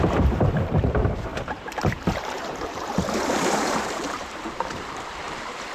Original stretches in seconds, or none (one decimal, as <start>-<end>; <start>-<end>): none